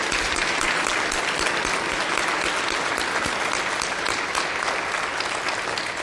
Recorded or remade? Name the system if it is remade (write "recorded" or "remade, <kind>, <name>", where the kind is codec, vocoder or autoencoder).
recorded